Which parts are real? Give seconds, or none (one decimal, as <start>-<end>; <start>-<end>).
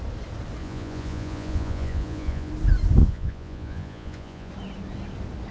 0.0-0.6; 2.5-3.0; 4.5-5.5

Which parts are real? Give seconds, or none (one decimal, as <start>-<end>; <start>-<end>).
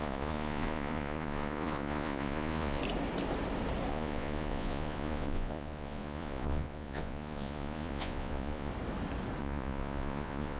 2.8-3.9; 8.7-9.4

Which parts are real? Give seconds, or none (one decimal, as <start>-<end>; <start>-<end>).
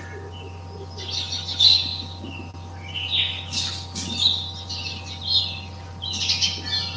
0.0-7.0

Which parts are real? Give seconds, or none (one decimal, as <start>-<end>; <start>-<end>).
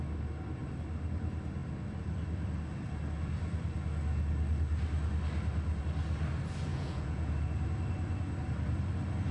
0.0-6.7; 7.3-9.3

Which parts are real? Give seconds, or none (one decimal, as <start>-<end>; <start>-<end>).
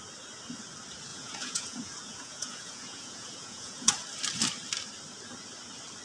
0.0-1.1; 3.9-6.0